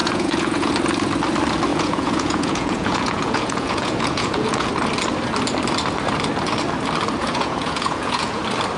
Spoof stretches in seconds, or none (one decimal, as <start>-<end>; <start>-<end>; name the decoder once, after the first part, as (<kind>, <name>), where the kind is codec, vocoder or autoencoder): 0.0-0.7 (vocoder, Vocos); 1.7-4.7; 7.2-8.4